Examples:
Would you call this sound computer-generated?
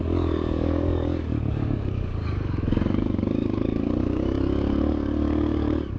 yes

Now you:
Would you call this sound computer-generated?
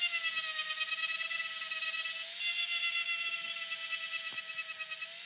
no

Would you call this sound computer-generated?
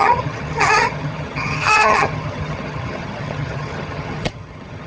yes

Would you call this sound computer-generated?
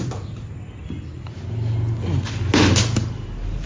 no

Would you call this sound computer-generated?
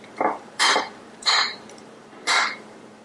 yes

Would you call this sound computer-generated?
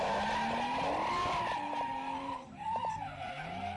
no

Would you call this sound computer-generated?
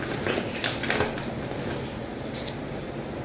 no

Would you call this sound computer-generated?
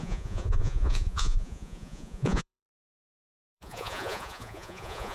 yes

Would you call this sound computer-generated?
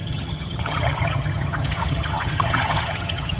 yes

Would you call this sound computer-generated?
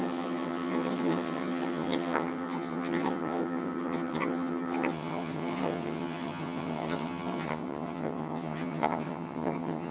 yes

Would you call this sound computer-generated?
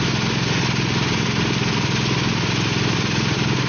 no